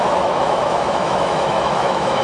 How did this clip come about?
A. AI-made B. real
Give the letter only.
A